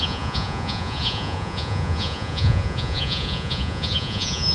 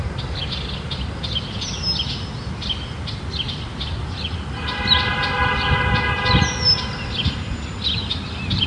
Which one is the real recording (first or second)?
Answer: second